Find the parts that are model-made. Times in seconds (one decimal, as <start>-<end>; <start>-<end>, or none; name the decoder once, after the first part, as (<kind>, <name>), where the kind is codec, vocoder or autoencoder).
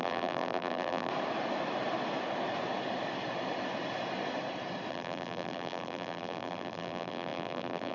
0.0-1.1 (vocoder, BigVGAN v2); 4.9-7.9